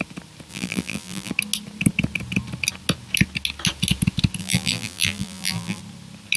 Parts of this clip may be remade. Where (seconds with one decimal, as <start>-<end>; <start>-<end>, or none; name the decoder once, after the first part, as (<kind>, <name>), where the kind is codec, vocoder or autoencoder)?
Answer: 0.5-1.3 (vocoder, BigVGAN v2); 4.4-5.8